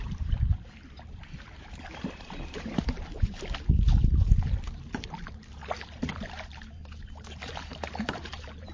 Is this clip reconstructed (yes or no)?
yes